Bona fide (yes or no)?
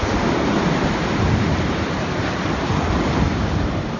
yes